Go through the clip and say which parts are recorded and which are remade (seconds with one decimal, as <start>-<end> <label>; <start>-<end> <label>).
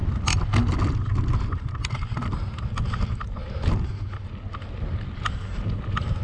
0.0-6.2 recorded